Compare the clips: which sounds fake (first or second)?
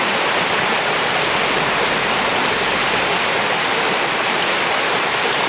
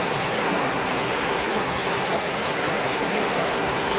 second